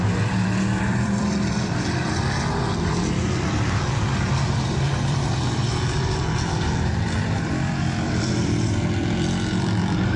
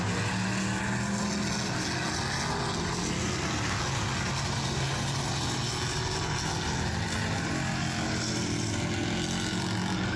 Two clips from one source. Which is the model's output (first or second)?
first